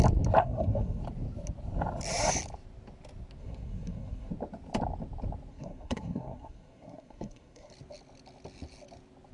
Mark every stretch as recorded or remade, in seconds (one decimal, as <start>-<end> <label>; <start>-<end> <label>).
0.0-0.4 recorded; 0.4-1.0 remade; 1.0-3.4 recorded; 3.4-4.3 remade; 4.3-5.5 recorded; 5.5-7.7 remade; 7.7-9.3 recorded